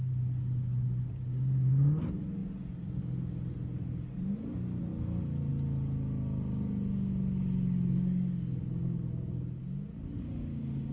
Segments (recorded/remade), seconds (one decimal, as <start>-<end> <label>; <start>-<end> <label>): 0.0-10.9 recorded